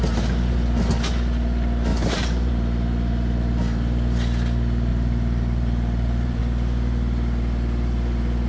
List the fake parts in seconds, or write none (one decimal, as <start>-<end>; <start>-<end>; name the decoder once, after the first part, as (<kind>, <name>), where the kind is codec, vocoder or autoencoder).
1.9-2.5 (vocoder, BigVGAN v2); 4.9-6.4